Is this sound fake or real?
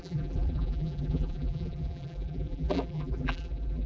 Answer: fake